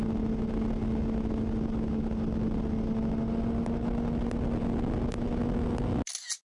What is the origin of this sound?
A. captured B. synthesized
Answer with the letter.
A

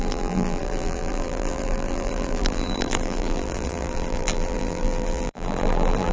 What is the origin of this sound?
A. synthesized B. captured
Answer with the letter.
A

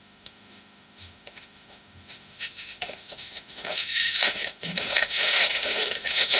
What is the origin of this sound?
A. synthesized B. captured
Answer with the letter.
A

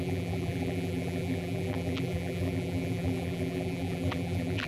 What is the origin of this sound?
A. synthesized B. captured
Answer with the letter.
A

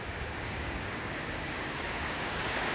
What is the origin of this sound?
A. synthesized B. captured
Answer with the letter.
A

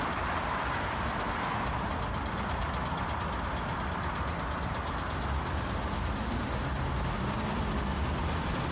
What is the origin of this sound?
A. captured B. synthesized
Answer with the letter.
A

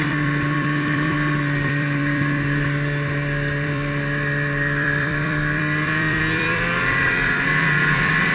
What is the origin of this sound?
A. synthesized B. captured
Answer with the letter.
A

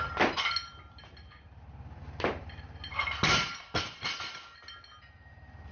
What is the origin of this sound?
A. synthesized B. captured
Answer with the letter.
B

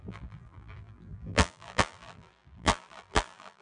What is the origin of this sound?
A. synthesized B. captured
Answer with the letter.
A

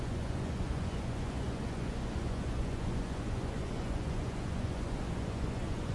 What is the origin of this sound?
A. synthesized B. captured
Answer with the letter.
A